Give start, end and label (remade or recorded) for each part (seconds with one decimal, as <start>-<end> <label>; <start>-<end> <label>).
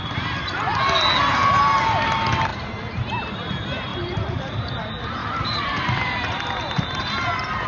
0.0-2.5 recorded; 2.5-3.5 remade; 3.5-3.9 recorded; 3.9-4.7 remade; 4.7-5.2 recorded; 5.2-7.0 remade; 7.0-7.7 recorded